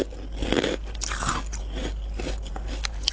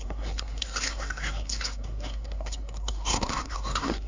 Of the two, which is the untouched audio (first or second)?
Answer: first